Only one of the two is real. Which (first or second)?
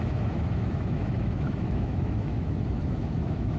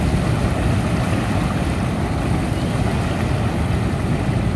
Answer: second